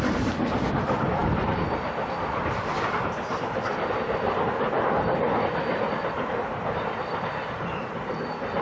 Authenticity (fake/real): real